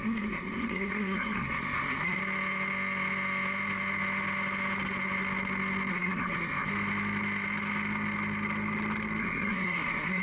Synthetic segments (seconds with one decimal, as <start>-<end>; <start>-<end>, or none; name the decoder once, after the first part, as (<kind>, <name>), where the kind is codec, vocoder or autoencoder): 0.0-2.2 (codec, SNAC); 5.9-6.7; 9.2-10.2